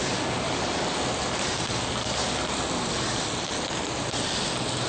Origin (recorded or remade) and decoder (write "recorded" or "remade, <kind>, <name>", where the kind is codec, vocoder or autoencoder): recorded